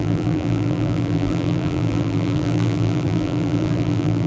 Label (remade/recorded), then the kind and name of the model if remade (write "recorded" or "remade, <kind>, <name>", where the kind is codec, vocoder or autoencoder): remade, vocoder, BigVGAN v2